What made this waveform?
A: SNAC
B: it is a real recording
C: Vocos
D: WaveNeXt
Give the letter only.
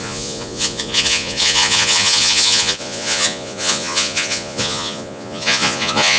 C